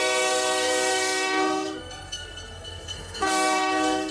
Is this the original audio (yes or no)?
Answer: no